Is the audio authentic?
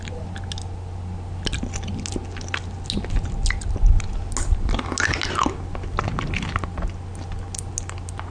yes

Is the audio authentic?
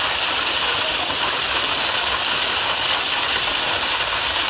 yes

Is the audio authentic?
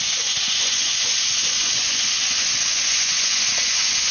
no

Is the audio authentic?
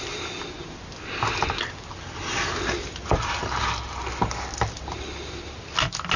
yes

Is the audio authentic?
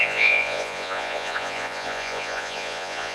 no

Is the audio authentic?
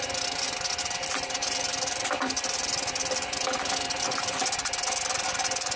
yes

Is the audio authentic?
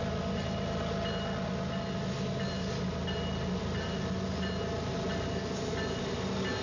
yes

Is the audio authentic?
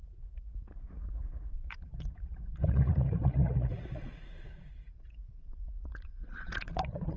no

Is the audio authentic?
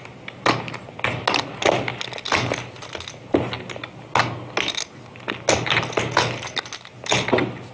yes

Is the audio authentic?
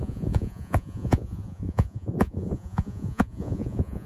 no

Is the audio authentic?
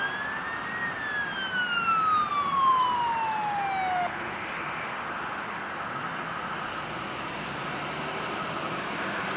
yes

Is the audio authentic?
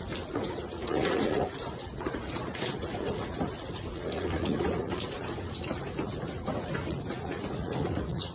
no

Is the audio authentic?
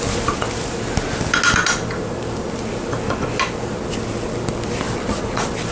yes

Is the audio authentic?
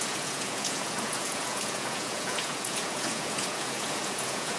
no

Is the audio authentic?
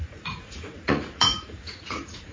no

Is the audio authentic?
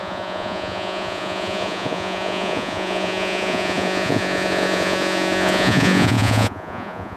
no